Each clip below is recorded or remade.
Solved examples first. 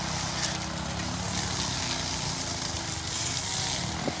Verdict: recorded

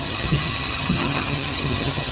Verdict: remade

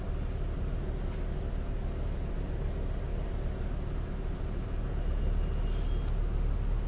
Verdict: recorded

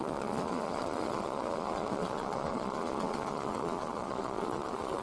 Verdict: remade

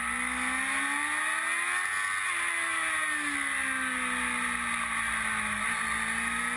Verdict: recorded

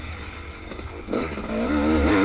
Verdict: remade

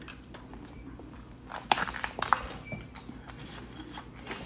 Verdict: remade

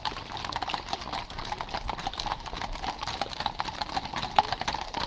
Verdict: recorded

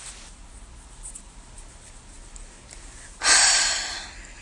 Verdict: recorded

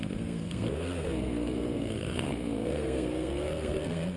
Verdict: remade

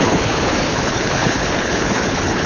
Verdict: remade